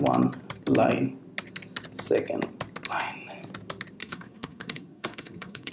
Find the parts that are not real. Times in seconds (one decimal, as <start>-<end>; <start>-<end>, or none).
4.0-5.7